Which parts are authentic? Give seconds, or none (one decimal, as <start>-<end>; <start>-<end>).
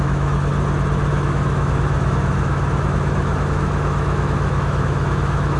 0.5-1.1